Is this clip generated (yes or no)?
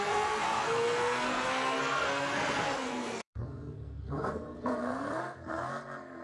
yes